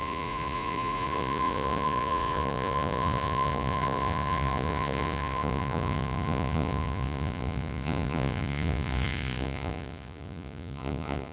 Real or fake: fake